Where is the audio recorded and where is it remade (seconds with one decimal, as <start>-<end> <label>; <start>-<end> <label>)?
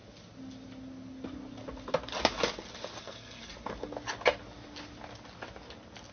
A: 0.0-3.0 recorded; 3.0-3.5 remade; 3.5-6.1 recorded